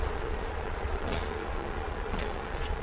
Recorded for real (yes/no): no